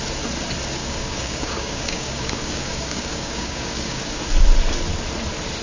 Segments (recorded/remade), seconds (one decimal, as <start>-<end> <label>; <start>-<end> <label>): 0.0-0.8 recorded; 0.8-4.2 remade; 4.2-5.6 recorded